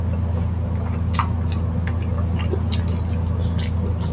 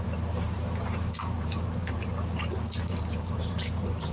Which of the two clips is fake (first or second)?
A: second